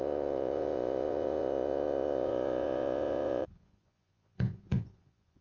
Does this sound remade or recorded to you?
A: remade